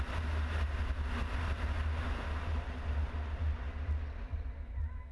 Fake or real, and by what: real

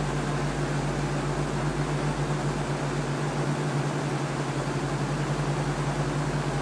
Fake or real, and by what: real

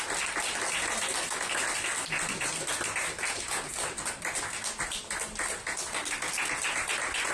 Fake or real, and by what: real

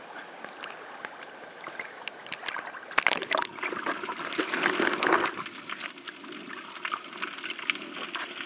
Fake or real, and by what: real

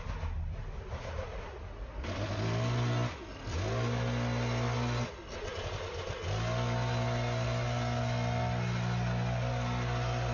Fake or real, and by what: real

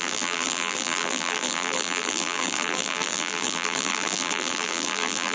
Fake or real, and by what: fake, vocoder, BigVGAN v2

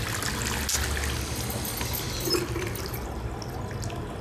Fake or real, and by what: real